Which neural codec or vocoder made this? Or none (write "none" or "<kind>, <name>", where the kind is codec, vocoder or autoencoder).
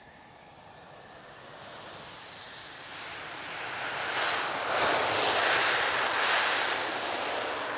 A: none